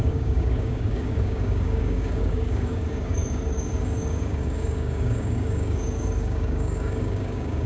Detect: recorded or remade remade